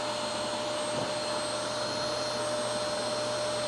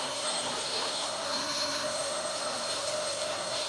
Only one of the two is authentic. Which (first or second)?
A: first